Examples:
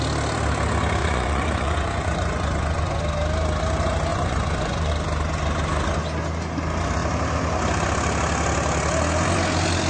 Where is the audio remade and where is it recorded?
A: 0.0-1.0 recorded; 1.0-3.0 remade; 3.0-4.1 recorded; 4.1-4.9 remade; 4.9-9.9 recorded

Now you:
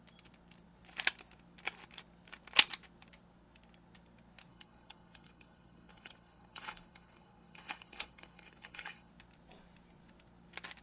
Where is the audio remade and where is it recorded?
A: 0.0-4.5 recorded; 4.5-9.1 remade; 9.1-10.8 recorded

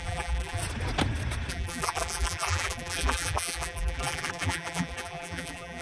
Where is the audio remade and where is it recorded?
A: 0.0-0.6 remade; 0.6-1.5 recorded; 1.5-5.8 remade

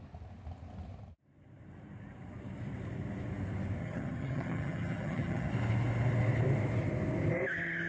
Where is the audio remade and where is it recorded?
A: 0.0-3.8 recorded; 3.8-5.5 remade; 5.5-7.9 recorded

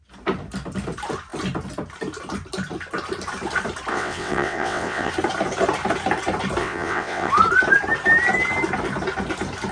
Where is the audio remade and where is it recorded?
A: 0.0-3.9 recorded; 3.9-5.1 remade; 5.1-6.6 recorded; 6.6-7.3 remade; 7.3-9.7 recorded

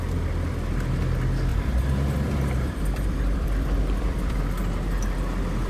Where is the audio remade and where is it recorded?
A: 0.0-1.5 recorded; 1.5-4.4 remade; 4.4-5.7 recorded

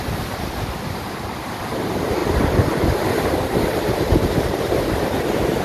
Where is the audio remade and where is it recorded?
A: 0.0-5.6 recorded

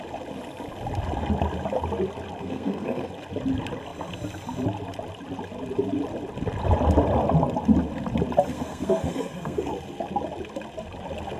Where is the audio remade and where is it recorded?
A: 0.0-2.4 recorded; 2.4-3.1 remade; 3.1-8.5 recorded; 8.5-9.7 remade; 9.7-11.4 recorded